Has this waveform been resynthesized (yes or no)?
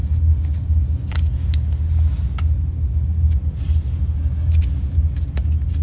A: no